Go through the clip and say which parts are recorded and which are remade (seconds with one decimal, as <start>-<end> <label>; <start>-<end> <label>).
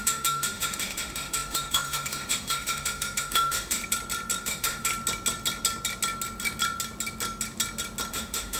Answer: 0.0-3.8 remade; 3.8-4.4 recorded; 4.4-4.9 remade; 4.9-8.1 recorded; 8.1-8.6 remade